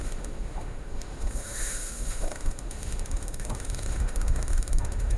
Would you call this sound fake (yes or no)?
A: yes